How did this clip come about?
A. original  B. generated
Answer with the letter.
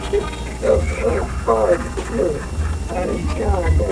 A